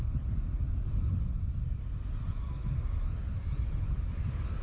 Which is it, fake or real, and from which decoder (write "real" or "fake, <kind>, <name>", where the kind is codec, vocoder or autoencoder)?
real